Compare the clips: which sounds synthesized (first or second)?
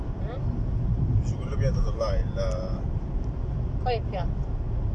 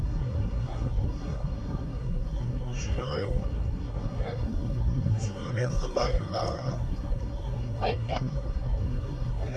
second